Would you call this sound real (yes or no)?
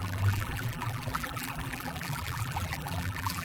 no